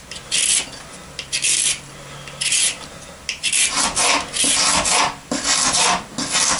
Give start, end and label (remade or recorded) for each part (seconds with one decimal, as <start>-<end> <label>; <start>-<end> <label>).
0.0-6.6 recorded